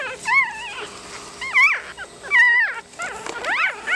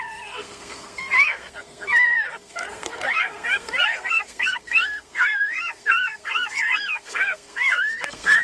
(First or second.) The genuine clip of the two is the first